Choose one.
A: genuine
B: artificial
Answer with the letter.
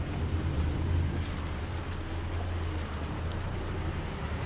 A